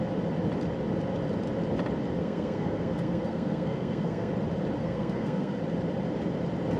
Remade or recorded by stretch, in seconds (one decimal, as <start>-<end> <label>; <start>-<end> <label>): 0.0-2.2 recorded; 2.2-4.3 remade; 4.3-4.8 recorded; 4.8-5.6 remade; 5.6-6.8 recorded